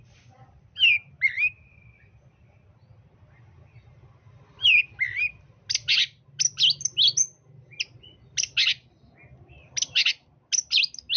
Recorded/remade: recorded